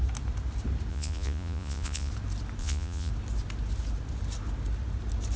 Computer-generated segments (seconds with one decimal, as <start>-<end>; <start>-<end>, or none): 0.9-2.1; 2.6-3.1